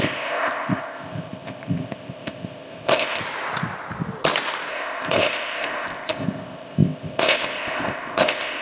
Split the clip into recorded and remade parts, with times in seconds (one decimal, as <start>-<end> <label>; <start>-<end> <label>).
0.0-3.2 remade; 3.2-4.7 recorded; 4.7-8.6 remade